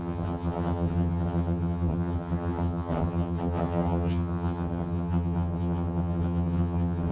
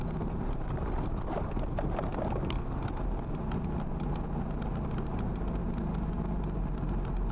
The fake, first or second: first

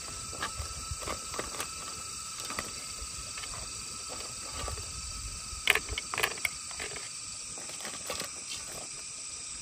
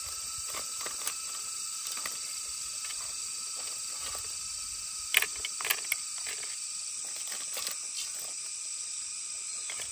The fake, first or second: first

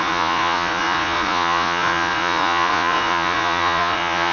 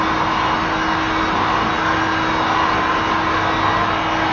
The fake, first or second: first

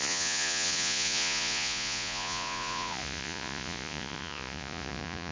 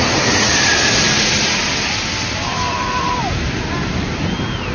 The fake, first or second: first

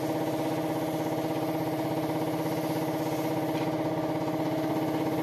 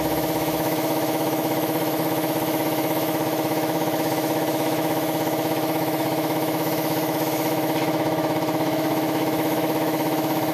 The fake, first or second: second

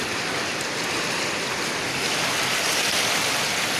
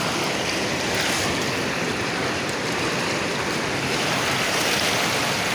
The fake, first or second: second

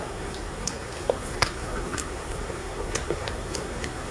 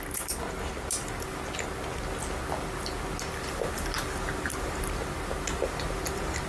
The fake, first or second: first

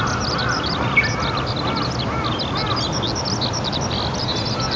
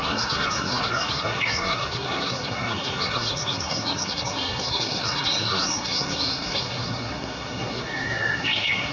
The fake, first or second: second